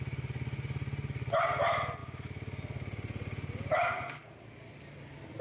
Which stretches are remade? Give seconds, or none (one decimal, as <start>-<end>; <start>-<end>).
none